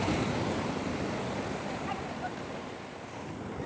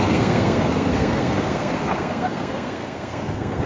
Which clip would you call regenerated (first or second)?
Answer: second